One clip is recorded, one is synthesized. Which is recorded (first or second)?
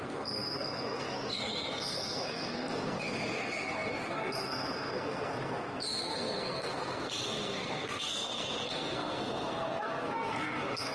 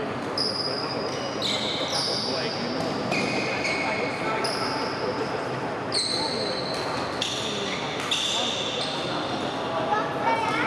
second